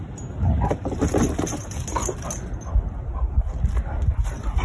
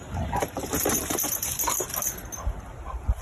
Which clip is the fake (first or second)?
second